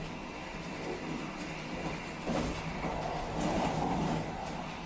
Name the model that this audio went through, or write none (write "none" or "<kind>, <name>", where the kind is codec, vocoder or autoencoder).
none